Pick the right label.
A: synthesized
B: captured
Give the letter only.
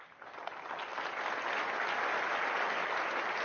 B